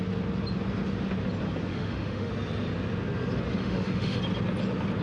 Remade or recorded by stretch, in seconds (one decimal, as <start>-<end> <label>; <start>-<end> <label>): 0.0-1.7 recorded; 1.7-2.3 remade; 2.3-3.6 recorded; 3.6-4.2 remade; 4.2-5.0 recorded